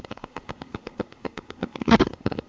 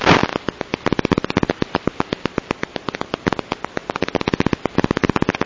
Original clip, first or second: second